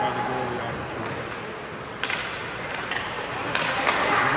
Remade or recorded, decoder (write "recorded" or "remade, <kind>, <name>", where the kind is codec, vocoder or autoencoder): recorded